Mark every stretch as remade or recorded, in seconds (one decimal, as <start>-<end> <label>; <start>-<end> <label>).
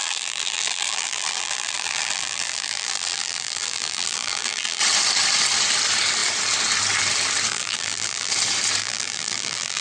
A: 0.0-4.8 remade; 4.8-7.5 recorded; 7.5-8.3 remade; 8.3-8.8 recorded; 8.8-9.8 remade